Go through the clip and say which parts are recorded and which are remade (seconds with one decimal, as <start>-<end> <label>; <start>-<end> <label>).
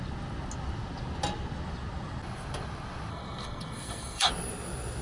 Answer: 0.0-3.1 recorded; 3.1-4.3 remade; 4.3-5.0 recorded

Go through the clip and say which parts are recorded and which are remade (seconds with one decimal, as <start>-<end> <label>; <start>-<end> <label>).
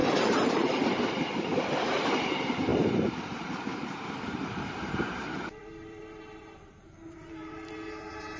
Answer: 0.0-1.6 recorded; 1.6-8.4 remade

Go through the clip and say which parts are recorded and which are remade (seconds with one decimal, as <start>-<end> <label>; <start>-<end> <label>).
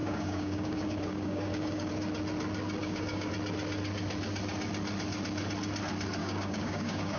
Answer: 0.0-1.9 remade; 1.9-2.8 recorded; 2.8-3.3 remade; 3.3-6.2 recorded; 6.2-7.2 remade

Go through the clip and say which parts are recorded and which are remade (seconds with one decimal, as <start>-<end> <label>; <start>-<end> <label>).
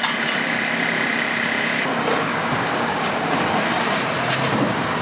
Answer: 0.0-2.3 recorded; 2.3-3.4 remade; 3.4-5.0 recorded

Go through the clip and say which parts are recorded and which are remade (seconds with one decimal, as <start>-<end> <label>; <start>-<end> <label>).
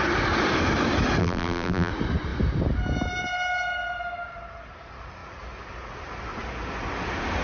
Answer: 0.0-1.2 recorded; 1.2-1.9 remade; 1.9-7.4 recorded